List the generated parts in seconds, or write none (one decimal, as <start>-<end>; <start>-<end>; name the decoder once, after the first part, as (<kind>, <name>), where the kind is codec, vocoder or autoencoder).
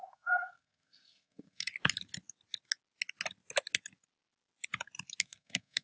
0.0-1.7 (codec, SNAC); 5.2-5.8